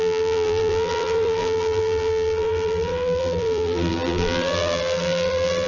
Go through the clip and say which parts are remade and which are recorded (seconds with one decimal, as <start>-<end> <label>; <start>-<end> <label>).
0.0-5.7 remade